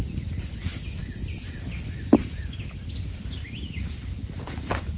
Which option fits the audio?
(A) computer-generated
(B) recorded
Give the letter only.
B